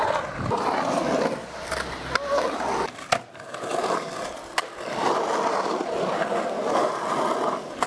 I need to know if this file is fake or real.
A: real